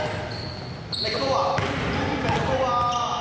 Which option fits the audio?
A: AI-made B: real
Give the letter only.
B